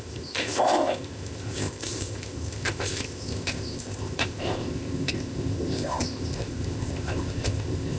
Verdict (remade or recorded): remade